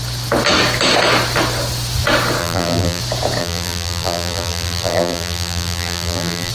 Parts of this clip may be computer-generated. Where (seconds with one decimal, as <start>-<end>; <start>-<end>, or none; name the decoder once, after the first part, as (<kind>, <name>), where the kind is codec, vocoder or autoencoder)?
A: 2.4-3.0 (vocoder, BigVGAN v2); 3.4-6.5